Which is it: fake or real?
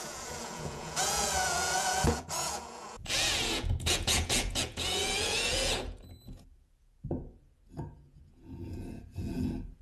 fake